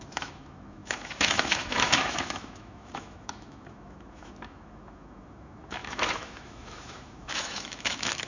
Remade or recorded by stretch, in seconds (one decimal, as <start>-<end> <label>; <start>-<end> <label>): 0.0-8.3 remade